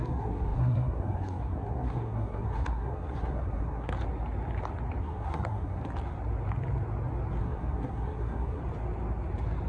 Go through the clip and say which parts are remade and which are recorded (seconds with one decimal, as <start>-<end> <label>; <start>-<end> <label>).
0.0-3.9 remade; 3.9-5.0 recorded; 5.0-5.8 remade; 5.8-7.4 recorded; 7.4-8.6 remade; 8.6-9.7 recorded